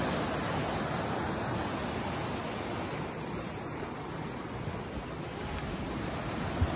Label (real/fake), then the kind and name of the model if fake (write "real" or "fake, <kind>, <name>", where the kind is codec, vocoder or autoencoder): real